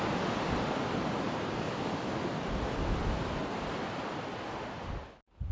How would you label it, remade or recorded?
recorded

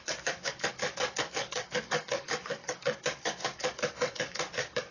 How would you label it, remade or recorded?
remade